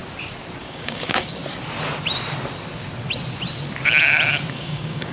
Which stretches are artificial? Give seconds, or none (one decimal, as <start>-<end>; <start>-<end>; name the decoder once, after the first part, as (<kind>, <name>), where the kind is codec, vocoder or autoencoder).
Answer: 0.6-1.4 (codec, DAC); 4.5-5.1